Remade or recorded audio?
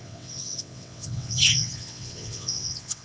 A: remade